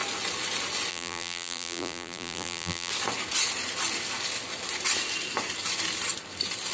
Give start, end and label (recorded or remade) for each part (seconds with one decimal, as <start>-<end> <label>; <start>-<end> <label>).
0.0-0.9 recorded; 0.9-2.9 remade; 2.9-6.7 recorded